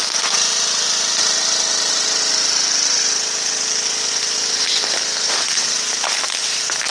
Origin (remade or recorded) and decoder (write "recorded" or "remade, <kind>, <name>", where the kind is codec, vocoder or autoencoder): recorded